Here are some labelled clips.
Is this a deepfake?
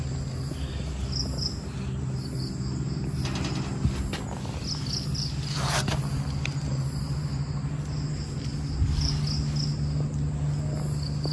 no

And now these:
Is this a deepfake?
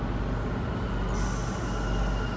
no